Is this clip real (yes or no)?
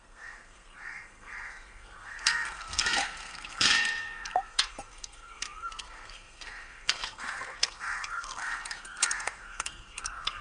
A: no